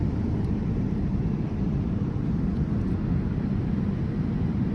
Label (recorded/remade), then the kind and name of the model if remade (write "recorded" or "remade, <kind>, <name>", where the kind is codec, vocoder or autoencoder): remade, vocoder, BigVGAN v2